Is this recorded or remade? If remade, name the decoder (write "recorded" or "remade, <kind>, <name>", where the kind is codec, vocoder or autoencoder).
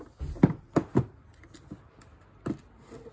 recorded